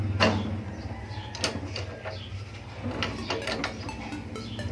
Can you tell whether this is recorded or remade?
recorded